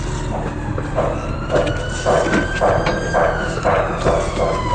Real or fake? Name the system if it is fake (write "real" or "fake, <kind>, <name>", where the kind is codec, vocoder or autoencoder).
real